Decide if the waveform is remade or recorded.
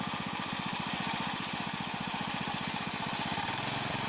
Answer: recorded